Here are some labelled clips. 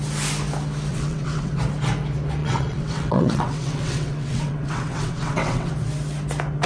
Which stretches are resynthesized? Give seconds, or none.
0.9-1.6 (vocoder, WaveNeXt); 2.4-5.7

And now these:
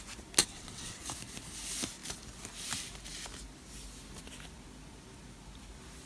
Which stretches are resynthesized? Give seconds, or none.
0.4-1.0 (vocoder, WaveNeXt)

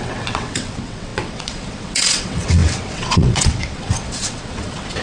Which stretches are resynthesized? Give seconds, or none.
0.0-5.0 (vocoder, WaveNeXt)

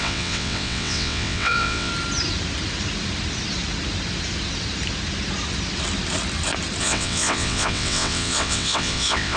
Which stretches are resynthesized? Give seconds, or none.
0.0-1.9 (vocoder, WaveNeXt); 6.8-9.4

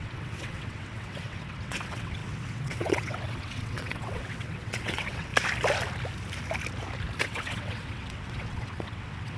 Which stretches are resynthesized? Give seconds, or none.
0.0-5.3 (vocoder, WaveNeXt); 7.2-9.4

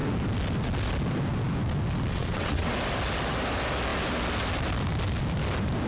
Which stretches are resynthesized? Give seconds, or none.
2.1-2.7 (vocoder, WaveNeXt)